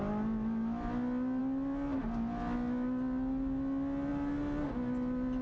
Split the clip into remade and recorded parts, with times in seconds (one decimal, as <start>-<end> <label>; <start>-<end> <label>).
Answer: 0.0-5.4 recorded